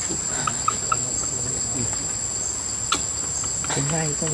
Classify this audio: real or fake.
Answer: real